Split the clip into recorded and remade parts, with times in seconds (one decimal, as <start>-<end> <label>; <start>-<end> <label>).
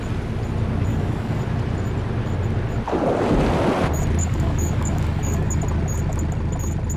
0.0-0.9 recorded; 0.9-1.4 remade; 1.4-4.2 recorded; 4.2-5.6 remade; 5.6-7.0 recorded